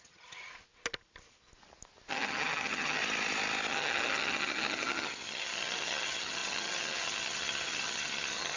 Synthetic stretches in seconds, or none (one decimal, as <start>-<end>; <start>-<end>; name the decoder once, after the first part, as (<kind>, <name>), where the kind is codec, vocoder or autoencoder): 0.0-0.5 (vocoder, HiFi-GAN); 2.1-3.0; 3.7-8.6